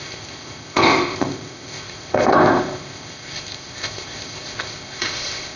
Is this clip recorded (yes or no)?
no